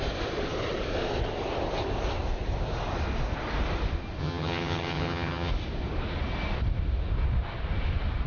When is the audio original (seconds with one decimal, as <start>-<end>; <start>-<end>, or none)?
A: 0.0-4.2; 5.5-8.3